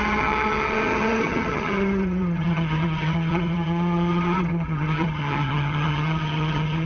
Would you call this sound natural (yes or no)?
no